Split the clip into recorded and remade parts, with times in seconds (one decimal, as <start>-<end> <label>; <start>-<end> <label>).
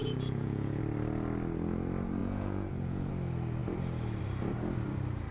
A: 0.0-0.8 remade; 0.8-2.2 recorded; 2.2-3.1 remade; 3.1-5.3 recorded